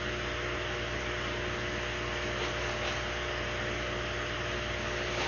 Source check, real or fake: real